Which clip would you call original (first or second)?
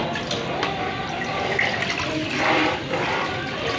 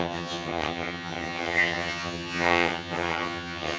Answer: first